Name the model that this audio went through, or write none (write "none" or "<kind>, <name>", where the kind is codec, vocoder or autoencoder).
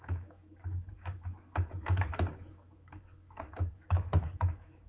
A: autoencoder, DAC-VAE